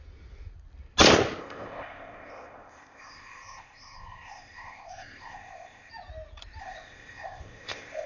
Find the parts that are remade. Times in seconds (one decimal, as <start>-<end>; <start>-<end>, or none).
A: 1.4-5.9; 6.6-8.1